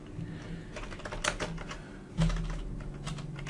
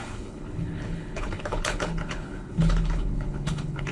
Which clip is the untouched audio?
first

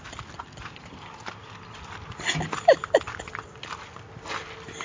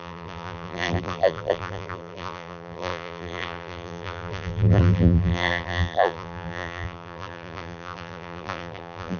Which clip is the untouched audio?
first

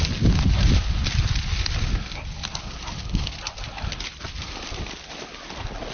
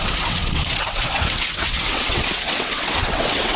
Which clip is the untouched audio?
first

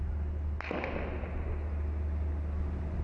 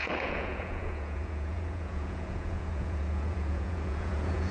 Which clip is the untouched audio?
first